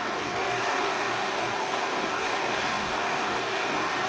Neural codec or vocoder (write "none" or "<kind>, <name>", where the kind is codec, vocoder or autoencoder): codec, DAC